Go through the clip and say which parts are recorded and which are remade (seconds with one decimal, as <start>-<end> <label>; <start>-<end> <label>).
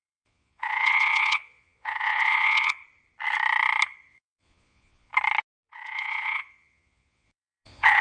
0.0-2.8 remade; 2.8-4.1 recorded; 4.1-5.1 remade; 5.1-5.7 recorded; 5.7-8.0 remade